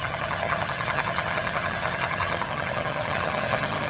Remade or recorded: remade